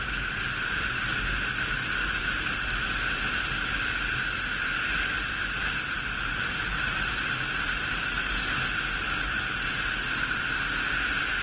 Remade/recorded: recorded